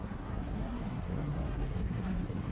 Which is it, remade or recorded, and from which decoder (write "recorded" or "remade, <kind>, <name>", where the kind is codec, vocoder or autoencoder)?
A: remade, codec, SNAC